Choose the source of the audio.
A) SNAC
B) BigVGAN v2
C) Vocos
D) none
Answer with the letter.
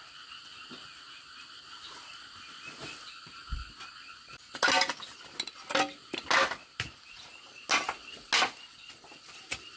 D